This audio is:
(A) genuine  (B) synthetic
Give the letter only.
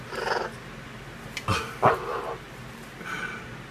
A